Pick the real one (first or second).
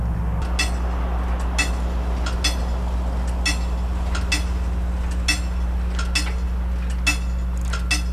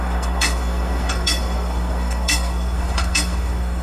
first